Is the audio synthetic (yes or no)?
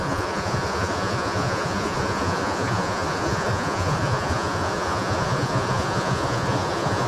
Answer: yes